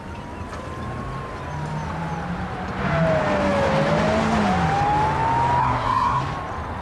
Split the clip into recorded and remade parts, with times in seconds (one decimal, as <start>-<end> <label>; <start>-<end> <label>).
0.0-5.6 recorded; 5.6-6.2 remade; 6.2-6.8 recorded